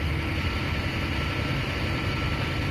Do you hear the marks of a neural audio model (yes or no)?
no